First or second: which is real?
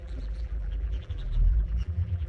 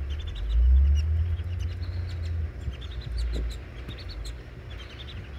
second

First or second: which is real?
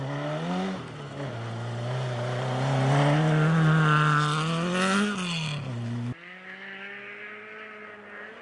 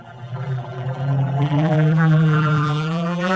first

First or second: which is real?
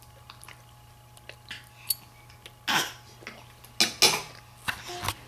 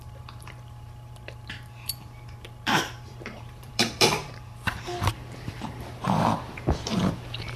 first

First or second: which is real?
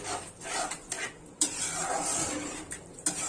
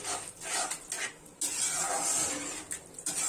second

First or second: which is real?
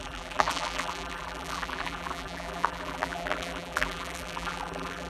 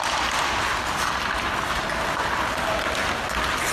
second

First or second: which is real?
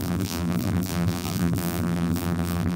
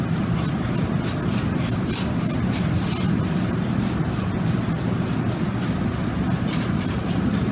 second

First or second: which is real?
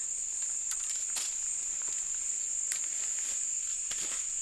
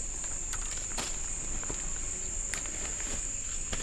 first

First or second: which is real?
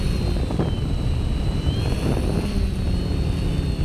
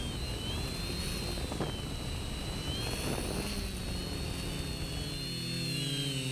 second